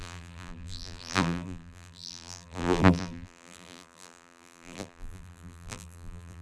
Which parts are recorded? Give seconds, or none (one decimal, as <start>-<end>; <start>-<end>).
none